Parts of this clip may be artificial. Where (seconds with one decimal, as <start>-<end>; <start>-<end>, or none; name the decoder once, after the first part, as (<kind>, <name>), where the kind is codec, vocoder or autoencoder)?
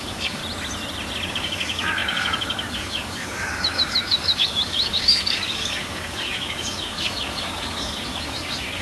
0.0-0.4 (codec, DAC); 1.3-8.8